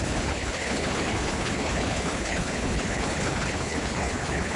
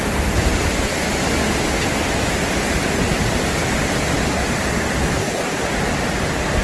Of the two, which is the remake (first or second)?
first